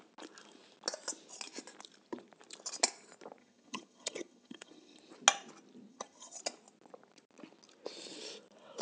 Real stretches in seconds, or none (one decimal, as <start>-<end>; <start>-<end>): 0.0-3.4; 5.0-5.9; 6.4-8.8